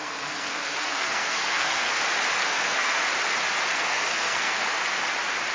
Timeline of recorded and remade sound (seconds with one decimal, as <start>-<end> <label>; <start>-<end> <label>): 0.0-2.0 remade; 2.0-2.4 recorded; 2.4-3.0 remade; 3.0-3.7 recorded; 3.7-4.8 remade; 4.8-5.5 recorded